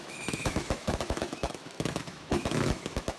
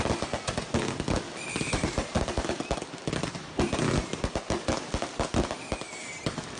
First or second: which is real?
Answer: second